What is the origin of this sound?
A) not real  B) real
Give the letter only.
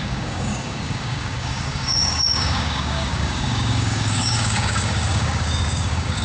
A